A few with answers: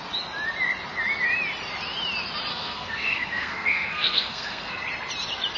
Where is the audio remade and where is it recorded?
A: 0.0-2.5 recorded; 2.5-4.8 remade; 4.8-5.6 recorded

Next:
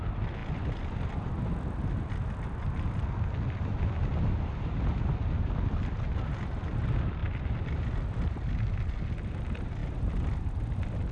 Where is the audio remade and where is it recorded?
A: 0.0-11.1 recorded

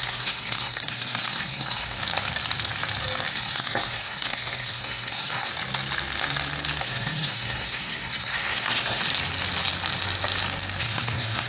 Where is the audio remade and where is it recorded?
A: 0.0-2.0 remade; 2.0-3.3 recorded; 3.3-5.5 remade; 5.5-6.8 recorded; 6.8-9.0 remade; 9.0-10.8 recorded; 10.8-11.5 remade

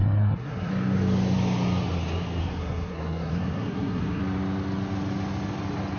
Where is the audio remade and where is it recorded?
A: 0.0-0.7 remade; 0.7-2.4 recorded; 2.4-4.2 remade; 4.2-6.0 recorded

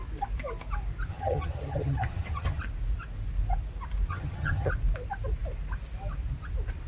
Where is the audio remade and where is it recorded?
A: 0.0-1.1 recorded; 1.1-2.6 remade; 2.6-4.1 recorded; 4.1-4.7 remade; 4.7-6.9 recorded

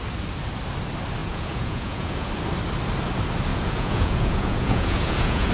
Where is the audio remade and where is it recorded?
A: 0.0-1.2 recorded; 1.2-2.3 remade; 2.3-3.5 recorded; 3.5-5.5 remade

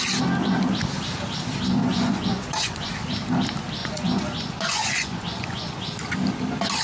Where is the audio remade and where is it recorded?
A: 0.0-1.8 recorded; 1.8-2.9 remade; 2.9-3.8 recorded; 3.8-5.8 remade; 5.8-6.8 recorded